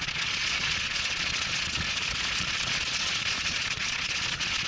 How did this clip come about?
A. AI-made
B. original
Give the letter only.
A